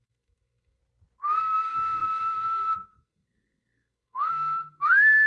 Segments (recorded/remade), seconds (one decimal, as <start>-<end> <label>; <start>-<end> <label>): 0.0-0.8 remade; 0.8-1.4 recorded; 1.4-5.3 remade